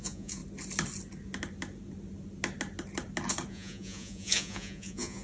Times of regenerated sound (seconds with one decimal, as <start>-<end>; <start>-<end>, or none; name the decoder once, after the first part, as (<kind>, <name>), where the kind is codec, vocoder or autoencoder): 0.0-0.4 (vocoder, Vocos); 3.5-5.2